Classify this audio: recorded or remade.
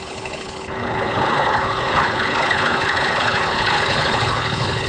remade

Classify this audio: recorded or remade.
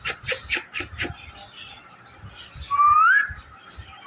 remade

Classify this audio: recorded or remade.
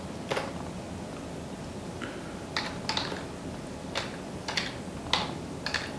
recorded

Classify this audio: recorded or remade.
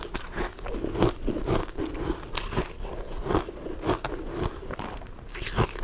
recorded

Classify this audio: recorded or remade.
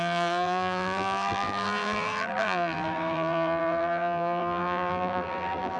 remade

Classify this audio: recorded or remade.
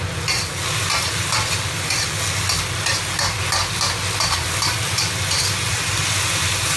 recorded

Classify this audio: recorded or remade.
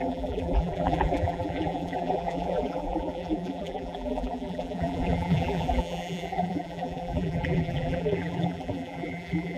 remade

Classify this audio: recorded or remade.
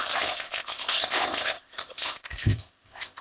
remade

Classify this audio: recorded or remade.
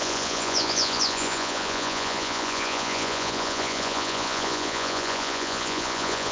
remade